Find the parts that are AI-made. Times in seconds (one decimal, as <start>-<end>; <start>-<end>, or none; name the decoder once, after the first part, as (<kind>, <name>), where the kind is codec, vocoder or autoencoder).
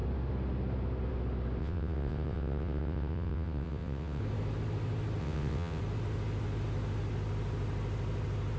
1.6-4.2 (vocoder, WaveNeXt); 5.2-5.8